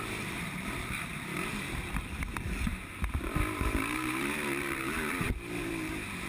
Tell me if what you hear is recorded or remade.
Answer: remade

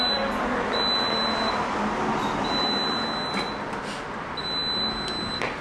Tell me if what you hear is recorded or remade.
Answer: recorded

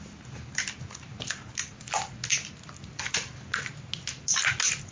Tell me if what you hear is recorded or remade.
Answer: recorded